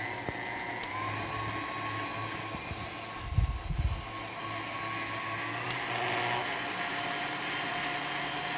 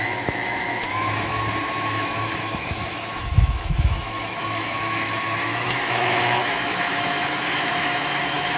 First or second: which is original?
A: first